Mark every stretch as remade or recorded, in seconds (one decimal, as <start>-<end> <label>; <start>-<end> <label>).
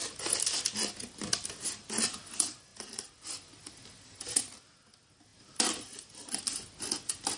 0.0-7.4 recorded